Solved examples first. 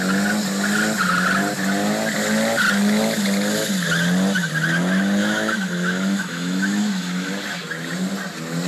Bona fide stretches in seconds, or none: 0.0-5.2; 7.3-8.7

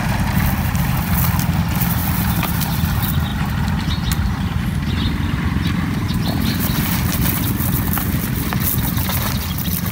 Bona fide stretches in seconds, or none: 0.0-9.9

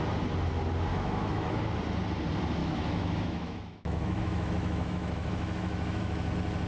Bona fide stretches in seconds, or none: 0.0-0.9; 1.6-2.6; 6.3-6.7

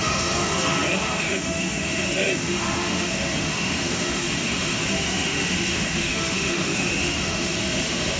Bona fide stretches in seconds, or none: none

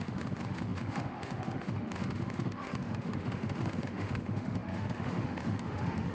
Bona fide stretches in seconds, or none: none

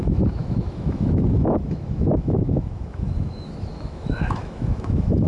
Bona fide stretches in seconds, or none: none